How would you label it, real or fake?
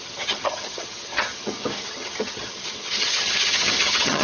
fake